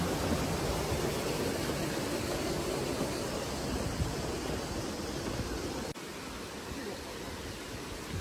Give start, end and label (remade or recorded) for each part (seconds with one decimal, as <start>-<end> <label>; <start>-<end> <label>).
0.0-8.2 recorded